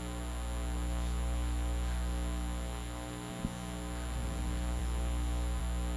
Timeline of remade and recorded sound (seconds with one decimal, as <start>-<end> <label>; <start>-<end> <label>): 0.0-6.0 recorded